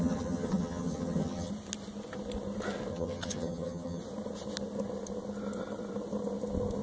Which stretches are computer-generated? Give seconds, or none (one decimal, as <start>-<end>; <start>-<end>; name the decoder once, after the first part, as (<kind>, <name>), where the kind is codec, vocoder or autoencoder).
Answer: 0.0-1.5 (vocoder, HiFi-GAN); 2.9-4.0